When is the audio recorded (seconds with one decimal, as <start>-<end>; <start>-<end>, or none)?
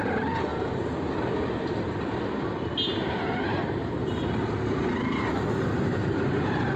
0.0-2.9